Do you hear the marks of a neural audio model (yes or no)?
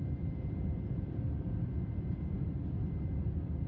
yes